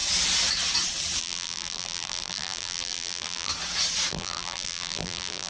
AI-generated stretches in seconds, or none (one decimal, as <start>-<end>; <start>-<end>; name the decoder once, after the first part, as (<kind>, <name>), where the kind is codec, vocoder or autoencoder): 1.2-3.5 (vocoder, BigVGAN v2); 4.1-5.5